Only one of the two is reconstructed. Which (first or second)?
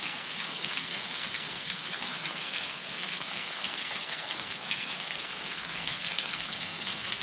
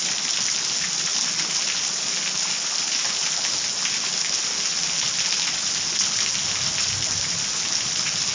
first